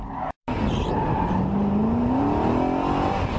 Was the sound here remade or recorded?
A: recorded